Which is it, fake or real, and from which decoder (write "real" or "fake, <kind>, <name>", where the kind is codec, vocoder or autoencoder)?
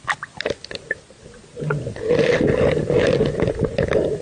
real